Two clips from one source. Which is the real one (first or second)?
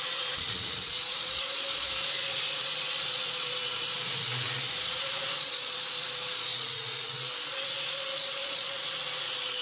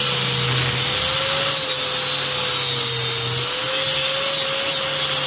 second